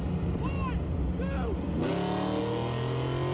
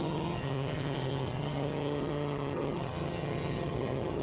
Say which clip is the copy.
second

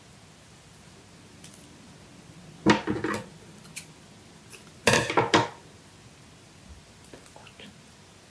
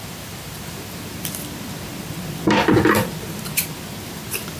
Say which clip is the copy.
second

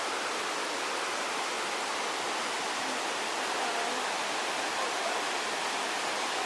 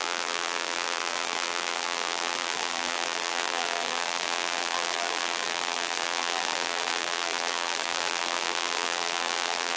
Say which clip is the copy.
second